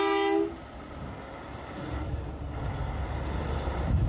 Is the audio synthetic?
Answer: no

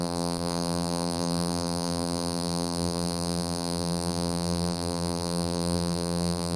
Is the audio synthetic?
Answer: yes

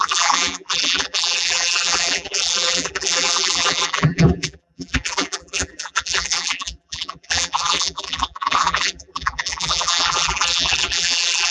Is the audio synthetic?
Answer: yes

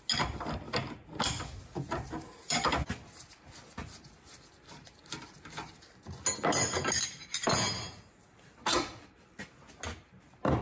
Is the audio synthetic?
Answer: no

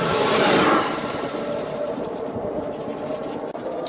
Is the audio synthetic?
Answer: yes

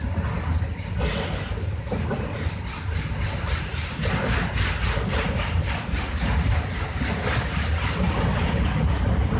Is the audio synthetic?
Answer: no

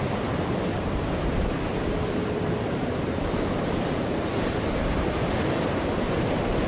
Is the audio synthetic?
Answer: yes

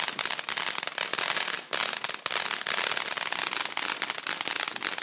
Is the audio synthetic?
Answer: no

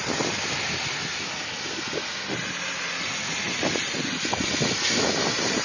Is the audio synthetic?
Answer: no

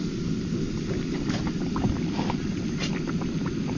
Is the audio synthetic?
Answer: no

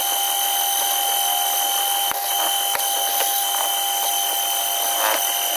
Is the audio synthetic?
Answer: no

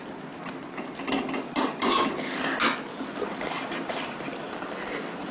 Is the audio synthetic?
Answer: yes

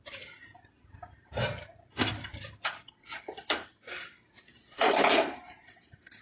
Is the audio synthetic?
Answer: yes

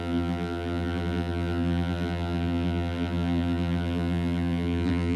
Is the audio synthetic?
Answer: yes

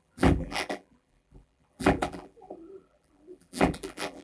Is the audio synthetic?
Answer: yes